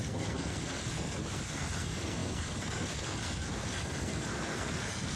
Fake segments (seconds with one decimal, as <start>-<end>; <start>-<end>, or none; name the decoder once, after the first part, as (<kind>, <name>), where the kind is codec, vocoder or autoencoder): 0.0-5.2 (codec, SNAC)